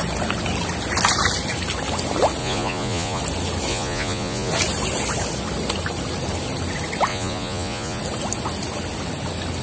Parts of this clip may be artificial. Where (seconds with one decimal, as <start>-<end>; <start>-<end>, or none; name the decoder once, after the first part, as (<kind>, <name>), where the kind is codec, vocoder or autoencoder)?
2.4-3.2 (vocoder, Vocos); 3.7-4.5; 7.1-8.0